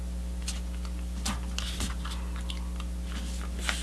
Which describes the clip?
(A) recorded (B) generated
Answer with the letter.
A